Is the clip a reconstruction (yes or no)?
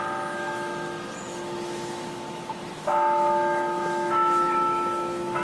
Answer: yes